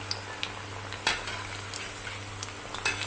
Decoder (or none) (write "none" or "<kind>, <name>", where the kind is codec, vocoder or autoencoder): none